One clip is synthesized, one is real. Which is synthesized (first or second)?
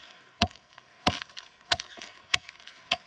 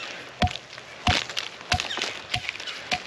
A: first